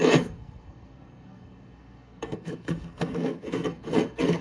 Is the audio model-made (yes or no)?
yes